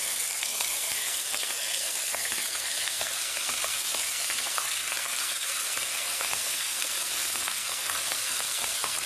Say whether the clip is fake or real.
fake